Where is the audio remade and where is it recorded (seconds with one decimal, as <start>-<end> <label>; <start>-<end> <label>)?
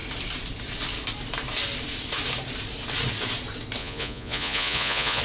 0.0-3.8 recorded; 3.8-5.2 remade